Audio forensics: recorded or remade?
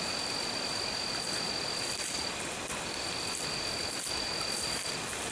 recorded